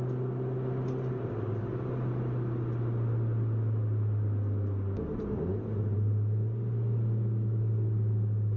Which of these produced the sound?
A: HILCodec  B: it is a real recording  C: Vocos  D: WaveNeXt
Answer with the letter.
B